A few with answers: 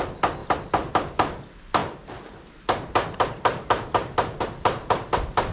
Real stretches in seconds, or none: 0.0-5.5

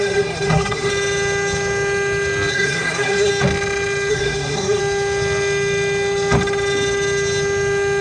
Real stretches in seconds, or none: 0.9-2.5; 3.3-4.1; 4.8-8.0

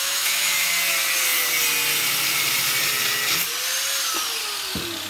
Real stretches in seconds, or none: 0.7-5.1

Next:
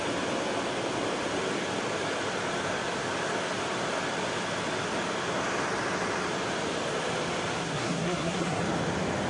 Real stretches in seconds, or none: 0.0-7.6; 8.6-9.3

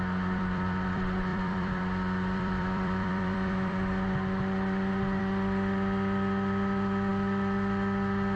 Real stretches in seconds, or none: 7.1-8.4